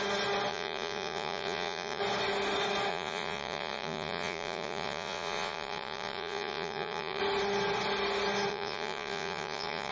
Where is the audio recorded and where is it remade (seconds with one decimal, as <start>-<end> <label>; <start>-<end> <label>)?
0.0-0.5 recorded; 0.5-2.0 remade; 2.0-2.9 recorded; 2.9-7.2 remade; 7.2-8.5 recorded; 8.5-9.9 remade

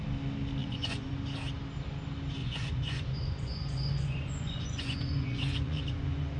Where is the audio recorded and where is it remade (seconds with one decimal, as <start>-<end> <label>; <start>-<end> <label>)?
0.0-0.6 recorded; 0.6-1.1 remade; 1.1-2.4 recorded; 2.4-6.4 remade